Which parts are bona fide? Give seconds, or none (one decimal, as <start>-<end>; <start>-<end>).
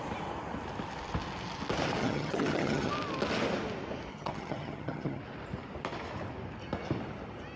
0.0-2.0; 2.9-4.1; 5.2-7.6